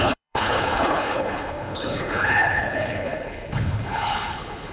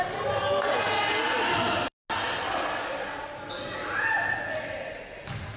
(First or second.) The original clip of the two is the second